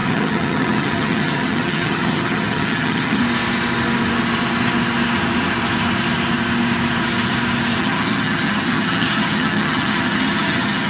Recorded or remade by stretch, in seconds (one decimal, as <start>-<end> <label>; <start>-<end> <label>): 0.0-3.2 remade; 3.2-7.8 recorded; 7.8-10.9 remade